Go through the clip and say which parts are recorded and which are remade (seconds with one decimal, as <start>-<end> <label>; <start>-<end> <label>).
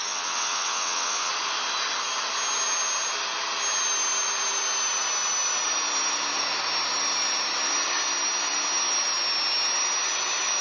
0.0-1.3 remade; 1.3-10.6 recorded